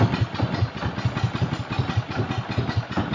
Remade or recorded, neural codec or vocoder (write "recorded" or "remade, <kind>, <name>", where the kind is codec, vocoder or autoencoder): recorded